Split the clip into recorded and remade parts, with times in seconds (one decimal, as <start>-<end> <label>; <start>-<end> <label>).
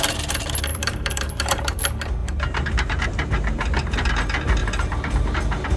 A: 0.0-0.7 recorded; 0.7-1.8 remade; 1.8-2.2 recorded; 2.2-4.1 remade; 4.1-4.6 recorded; 4.6-5.8 remade